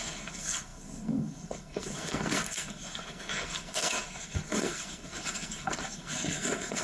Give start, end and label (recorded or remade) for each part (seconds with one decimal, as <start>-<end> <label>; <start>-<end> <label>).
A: 0.0-6.8 remade